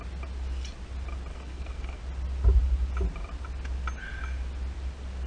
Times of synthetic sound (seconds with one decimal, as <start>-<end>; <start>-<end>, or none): 1.3-2.0